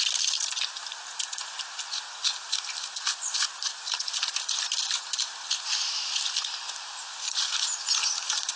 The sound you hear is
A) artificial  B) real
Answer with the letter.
B